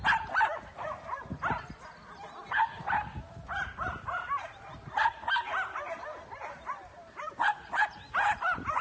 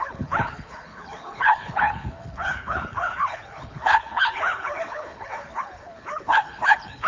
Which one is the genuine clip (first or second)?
first